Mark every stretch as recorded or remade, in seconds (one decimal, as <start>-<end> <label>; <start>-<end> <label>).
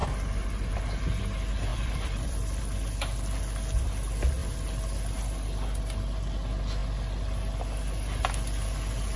0.0-1.7 recorded; 1.7-2.6 remade; 2.6-4.4 recorded; 4.4-5.8 remade; 5.8-9.2 recorded